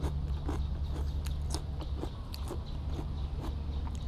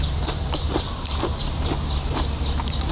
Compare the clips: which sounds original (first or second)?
first